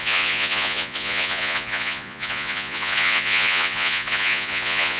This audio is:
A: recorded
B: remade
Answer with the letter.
B